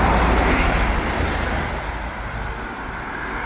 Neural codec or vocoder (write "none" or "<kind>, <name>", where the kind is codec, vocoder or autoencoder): none